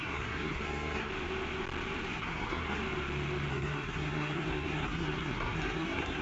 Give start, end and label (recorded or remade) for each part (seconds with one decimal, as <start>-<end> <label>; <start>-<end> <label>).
0.0-1.1 remade; 1.1-2.1 recorded; 2.1-2.8 remade; 2.8-3.5 recorded; 3.5-6.2 remade